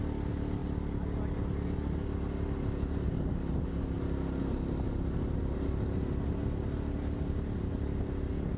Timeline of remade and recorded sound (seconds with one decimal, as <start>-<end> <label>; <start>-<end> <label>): 0.0-8.6 recorded